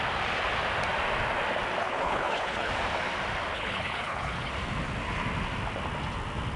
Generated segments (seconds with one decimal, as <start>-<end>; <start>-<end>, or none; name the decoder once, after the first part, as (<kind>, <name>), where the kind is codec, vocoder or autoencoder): 1.8-2.7 (codec, HILCodec); 3.5-4.5